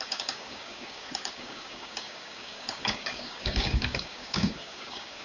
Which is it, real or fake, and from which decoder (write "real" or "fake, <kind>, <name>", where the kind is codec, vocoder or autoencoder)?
fake, codec, DAC